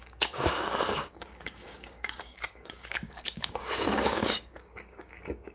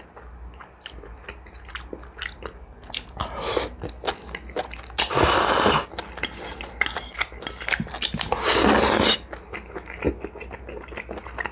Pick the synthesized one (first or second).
first